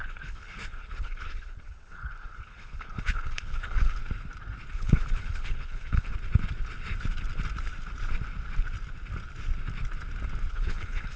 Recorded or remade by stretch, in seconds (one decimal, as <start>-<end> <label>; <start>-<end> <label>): 0.0-4.0 remade; 4.0-4.7 recorded; 4.7-6.1 remade; 6.1-10.5 recorded; 10.5-11.2 remade